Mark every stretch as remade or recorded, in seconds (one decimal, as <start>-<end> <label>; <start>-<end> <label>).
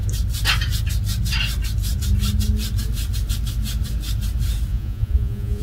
0.0-4.7 recorded; 4.7-5.6 remade